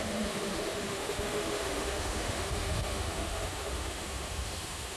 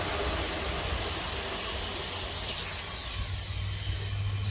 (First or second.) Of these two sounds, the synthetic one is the first